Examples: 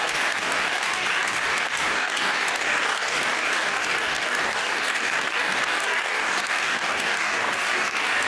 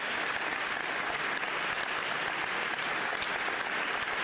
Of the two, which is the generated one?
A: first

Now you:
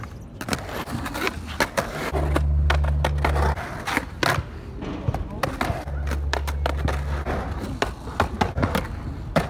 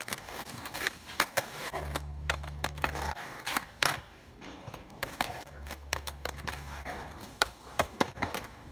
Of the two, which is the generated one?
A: second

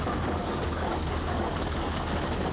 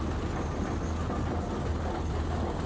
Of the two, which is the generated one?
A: first